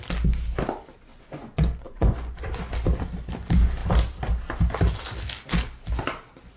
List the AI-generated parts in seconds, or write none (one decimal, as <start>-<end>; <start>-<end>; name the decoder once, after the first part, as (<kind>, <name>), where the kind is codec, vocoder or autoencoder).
1.1-2.4 (vocoder, Vocos)